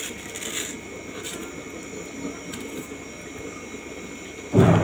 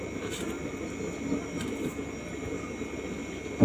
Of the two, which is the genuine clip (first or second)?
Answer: second